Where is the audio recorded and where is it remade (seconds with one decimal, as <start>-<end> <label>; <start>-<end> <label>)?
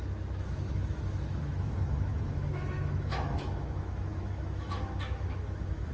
0.0-5.9 remade